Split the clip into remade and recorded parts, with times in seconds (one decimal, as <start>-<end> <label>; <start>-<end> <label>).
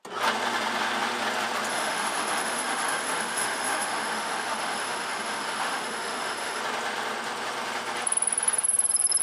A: 0.0-1.7 recorded; 1.7-6.6 remade; 6.6-9.2 recorded